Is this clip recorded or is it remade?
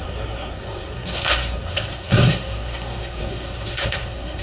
remade